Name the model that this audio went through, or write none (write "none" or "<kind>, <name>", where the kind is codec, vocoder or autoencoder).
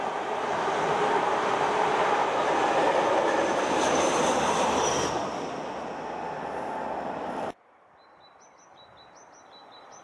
vocoder, BigVGAN v2